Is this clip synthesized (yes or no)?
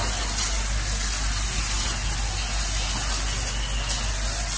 no